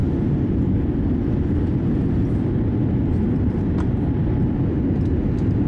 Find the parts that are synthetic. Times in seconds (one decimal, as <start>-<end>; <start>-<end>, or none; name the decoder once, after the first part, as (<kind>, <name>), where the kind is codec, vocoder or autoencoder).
none